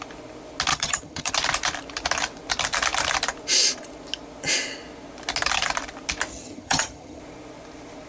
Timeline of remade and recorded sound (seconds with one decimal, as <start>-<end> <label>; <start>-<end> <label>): 0.0-0.7 recorded; 0.7-1.3 remade; 1.3-6.3 recorded; 6.3-7.2 remade; 7.2-8.1 recorded

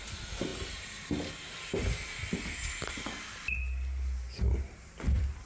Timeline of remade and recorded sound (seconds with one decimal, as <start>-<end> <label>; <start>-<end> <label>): 0.0-5.5 recorded

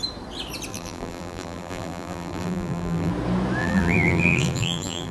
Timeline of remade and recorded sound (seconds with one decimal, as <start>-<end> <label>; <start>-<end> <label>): 0.0-0.7 recorded; 0.7-3.1 remade; 3.1-3.6 recorded; 3.6-5.1 remade

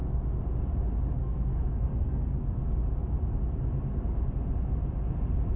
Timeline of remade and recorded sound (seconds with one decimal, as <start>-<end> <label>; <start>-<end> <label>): 0.0-1.2 recorded; 1.2-2.5 remade; 2.5-5.6 recorded

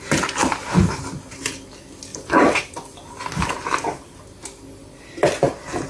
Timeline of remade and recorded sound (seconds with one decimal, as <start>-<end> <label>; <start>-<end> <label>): 0.0-2.1 recorded; 2.1-4.2 remade; 4.2-4.8 recorded; 4.8-5.4 remade; 5.4-5.9 recorded